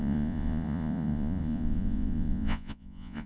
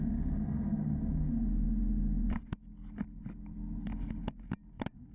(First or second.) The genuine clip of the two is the second